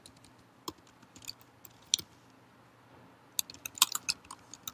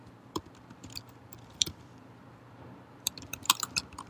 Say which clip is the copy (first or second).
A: second